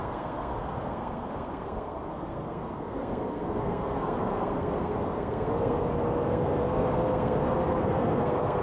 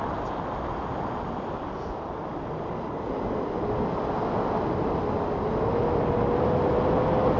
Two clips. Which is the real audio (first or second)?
second